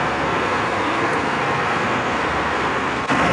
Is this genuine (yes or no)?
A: no